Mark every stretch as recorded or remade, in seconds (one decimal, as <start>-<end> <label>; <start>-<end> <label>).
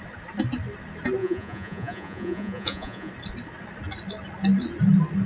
0.0-1.2 recorded; 1.2-3.1 remade; 3.1-5.3 recorded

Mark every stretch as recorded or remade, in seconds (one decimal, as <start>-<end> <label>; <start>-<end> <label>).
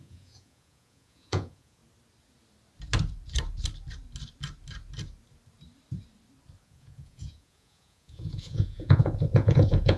0.0-1.8 remade; 1.8-6.6 recorded; 6.6-10.0 remade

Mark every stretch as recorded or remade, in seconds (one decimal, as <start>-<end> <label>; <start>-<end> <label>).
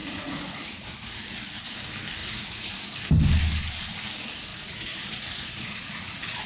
0.0-1.2 remade; 1.2-2.2 recorded; 2.2-2.7 remade; 2.7-4.5 recorded; 4.5-6.5 remade